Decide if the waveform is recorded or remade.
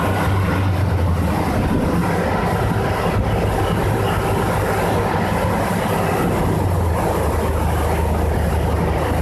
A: recorded